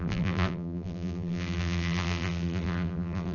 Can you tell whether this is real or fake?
fake